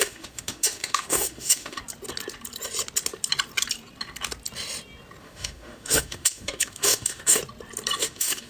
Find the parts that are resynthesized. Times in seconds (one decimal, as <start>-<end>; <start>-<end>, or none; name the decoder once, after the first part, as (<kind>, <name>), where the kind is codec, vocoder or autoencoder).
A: 0.0-1.8 (autoencoder, DAC-VAE); 5.2-7.4; 8.0-8.5

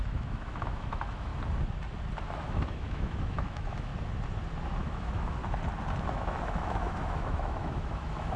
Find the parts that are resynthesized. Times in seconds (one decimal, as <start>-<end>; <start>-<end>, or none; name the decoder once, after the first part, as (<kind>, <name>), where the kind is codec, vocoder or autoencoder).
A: 0.0-1.3 (autoencoder, DAC-VAE); 2.2-3.9; 4.8-5.4; 6.1-8.4

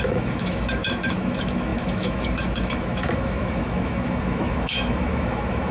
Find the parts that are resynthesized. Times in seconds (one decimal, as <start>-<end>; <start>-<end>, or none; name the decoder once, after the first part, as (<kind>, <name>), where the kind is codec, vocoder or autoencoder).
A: 0.0-5.7 (autoencoder, DAC-VAE)

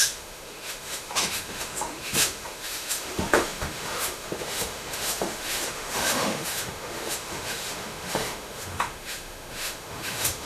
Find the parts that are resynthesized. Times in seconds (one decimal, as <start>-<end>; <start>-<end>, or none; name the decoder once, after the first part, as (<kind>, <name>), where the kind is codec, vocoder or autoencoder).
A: 0.0-10.5 (autoencoder, DAC-VAE)

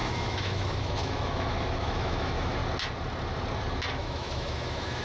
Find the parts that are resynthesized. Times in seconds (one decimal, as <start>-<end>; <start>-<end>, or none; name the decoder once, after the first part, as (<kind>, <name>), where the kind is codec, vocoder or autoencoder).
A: 0.0-2.6 (autoencoder, DAC-VAE); 3.9-5.0

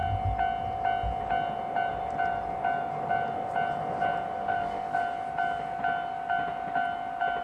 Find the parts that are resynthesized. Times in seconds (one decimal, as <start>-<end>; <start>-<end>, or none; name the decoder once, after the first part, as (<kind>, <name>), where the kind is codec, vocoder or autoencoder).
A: 4.4-5.0 (autoencoder, DAC-VAE)

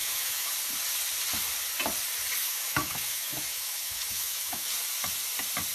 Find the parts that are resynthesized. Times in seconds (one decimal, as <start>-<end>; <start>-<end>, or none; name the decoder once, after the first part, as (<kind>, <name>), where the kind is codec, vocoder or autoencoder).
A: 0.0-0.5 (autoencoder, DAC-VAE); 2.4-4.7